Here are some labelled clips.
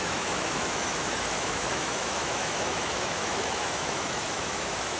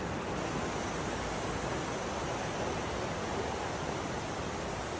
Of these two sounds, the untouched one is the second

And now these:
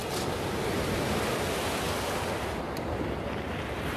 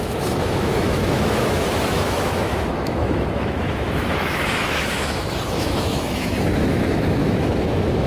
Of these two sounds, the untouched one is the first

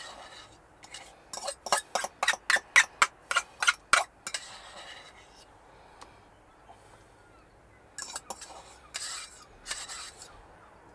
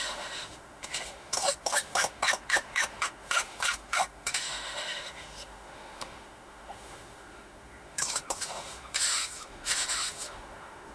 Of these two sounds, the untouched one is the first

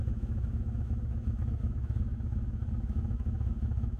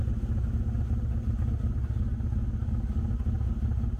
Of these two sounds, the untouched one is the second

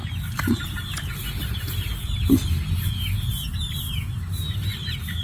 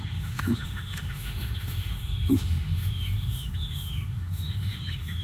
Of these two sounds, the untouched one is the first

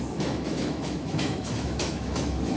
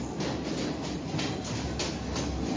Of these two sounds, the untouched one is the second